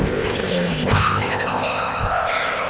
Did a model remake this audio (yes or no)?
yes